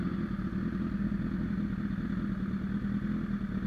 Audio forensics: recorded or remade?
recorded